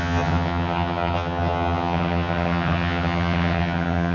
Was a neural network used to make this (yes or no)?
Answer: yes